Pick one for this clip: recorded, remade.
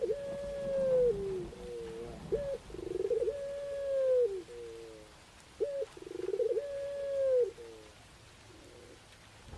recorded